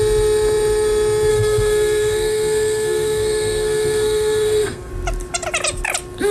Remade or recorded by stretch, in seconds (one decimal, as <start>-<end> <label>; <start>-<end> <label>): 0.0-1.3 recorded; 1.3-4.9 remade; 4.9-6.3 recorded